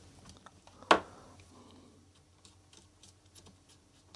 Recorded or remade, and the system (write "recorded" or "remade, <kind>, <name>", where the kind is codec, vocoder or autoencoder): recorded